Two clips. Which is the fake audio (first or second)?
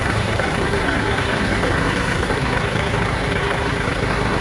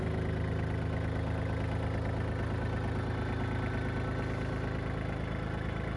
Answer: first